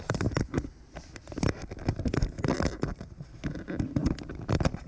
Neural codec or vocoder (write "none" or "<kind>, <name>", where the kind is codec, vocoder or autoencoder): none